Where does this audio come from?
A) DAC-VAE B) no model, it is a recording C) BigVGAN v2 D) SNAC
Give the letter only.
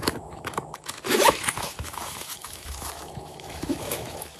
A